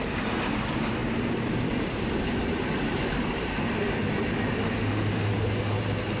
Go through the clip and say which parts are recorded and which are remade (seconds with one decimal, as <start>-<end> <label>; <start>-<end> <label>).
0.0-4.6 recorded; 4.6-5.3 remade; 5.3-6.2 recorded